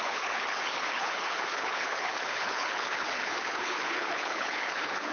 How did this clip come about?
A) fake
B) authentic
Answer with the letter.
A